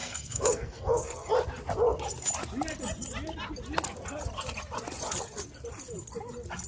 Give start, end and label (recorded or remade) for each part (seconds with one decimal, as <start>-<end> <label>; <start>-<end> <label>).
0.0-1.3 remade; 1.3-6.7 recorded